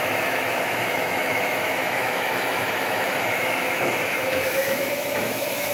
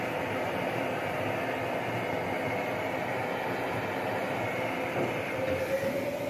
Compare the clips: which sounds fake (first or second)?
first